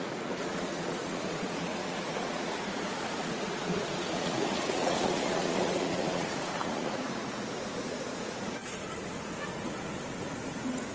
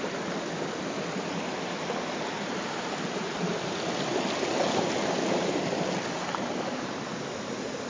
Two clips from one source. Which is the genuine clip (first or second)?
second